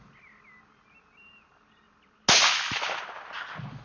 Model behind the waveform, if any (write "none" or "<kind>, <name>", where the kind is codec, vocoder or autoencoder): none